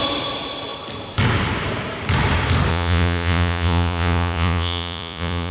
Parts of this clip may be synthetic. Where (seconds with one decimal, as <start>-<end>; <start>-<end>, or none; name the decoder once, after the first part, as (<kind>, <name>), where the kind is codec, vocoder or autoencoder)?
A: 2.7-5.5 (vocoder, Vocos)